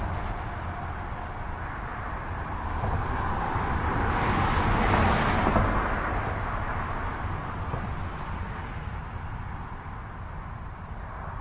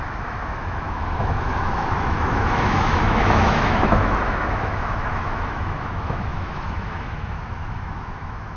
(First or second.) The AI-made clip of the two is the second